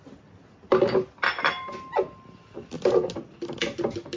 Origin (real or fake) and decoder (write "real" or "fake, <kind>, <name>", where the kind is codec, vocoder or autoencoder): real